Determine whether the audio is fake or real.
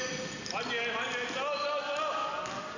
real